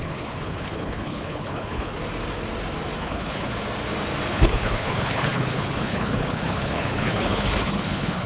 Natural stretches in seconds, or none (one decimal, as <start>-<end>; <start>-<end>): 2.0-3.0; 3.5-4.3